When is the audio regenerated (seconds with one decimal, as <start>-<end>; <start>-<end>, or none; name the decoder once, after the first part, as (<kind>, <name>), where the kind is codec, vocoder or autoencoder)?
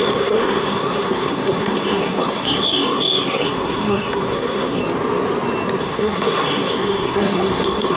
0.0-4.8 (codec, SNAC); 5.8-8.0